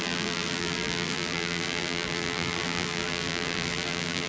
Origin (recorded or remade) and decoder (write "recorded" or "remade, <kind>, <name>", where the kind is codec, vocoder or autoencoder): remade, vocoder, BigVGAN v2